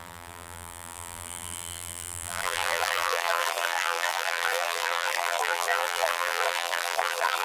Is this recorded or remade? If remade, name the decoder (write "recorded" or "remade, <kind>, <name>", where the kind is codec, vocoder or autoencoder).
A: remade, vocoder, BigVGAN v2